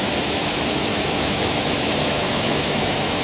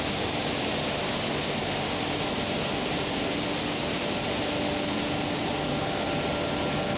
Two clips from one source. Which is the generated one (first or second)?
first